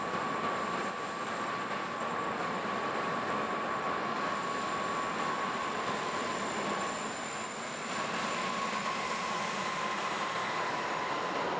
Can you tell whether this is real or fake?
fake